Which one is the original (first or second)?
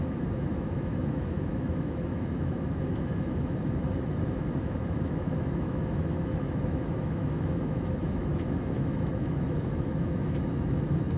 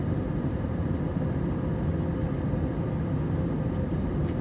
second